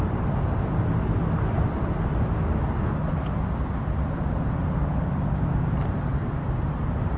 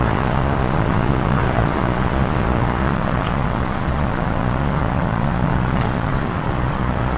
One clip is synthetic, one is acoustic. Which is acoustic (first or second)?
first